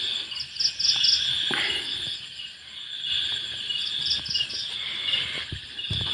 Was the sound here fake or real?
real